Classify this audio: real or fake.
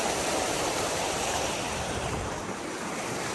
fake